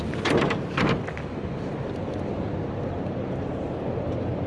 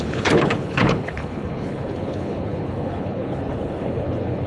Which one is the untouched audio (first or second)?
first